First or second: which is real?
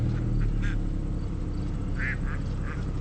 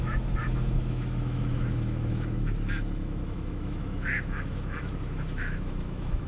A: first